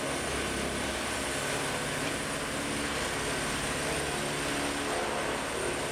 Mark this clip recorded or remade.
recorded